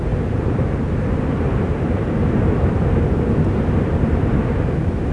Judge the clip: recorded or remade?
remade